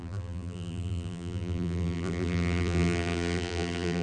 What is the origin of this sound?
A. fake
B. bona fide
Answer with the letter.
A